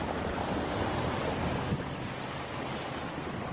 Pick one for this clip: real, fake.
real